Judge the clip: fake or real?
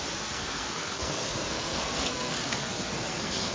fake